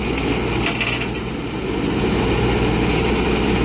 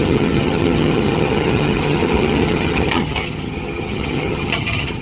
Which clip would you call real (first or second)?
first